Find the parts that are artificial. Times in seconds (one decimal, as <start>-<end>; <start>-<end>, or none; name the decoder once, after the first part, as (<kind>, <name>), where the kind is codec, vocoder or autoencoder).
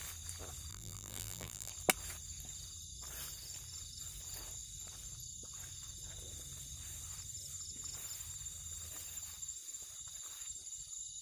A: 0.7-1.7 (vocoder, BigVGAN v2)